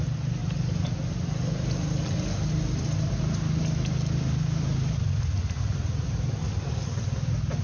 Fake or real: real